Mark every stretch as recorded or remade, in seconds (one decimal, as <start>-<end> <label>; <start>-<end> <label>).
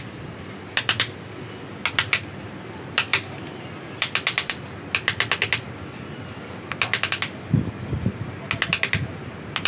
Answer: 0.0-9.7 recorded